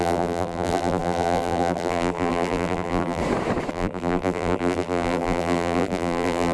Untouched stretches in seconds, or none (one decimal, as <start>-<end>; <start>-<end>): 3.2-3.7